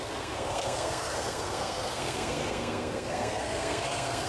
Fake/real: fake